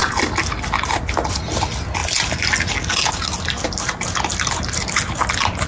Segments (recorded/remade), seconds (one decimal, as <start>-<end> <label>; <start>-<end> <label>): 0.0-1.0 remade; 1.0-4.3 recorded; 4.3-4.9 remade; 4.9-5.7 recorded